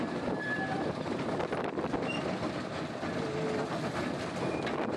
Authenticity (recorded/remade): remade